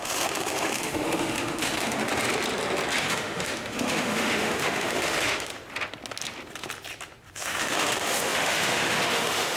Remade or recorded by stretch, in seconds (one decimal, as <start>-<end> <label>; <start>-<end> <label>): 0.0-2.0 remade; 2.0-3.0 recorded; 3.0-5.5 remade; 5.5-7.3 recorded; 7.3-9.6 remade